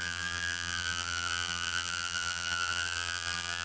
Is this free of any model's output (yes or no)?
no